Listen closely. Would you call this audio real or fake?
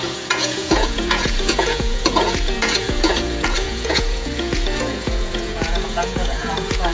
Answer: fake